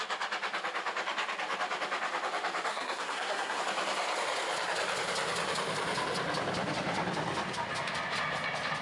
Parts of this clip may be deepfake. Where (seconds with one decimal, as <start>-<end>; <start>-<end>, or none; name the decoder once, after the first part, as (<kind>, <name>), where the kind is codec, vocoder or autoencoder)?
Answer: 2.7-3.6 (codec, SNAC)